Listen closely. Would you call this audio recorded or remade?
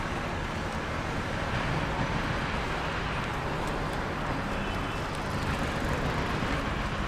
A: recorded